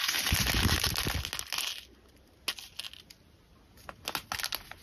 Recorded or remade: recorded